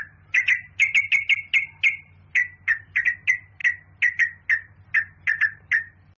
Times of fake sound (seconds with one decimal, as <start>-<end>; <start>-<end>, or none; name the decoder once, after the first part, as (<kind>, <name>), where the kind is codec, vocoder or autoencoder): none